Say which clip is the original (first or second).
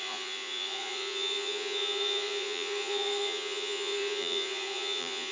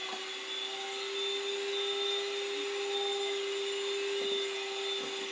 second